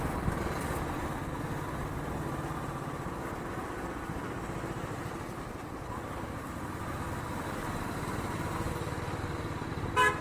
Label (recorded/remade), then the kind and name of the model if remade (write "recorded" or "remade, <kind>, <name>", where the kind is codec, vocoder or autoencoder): recorded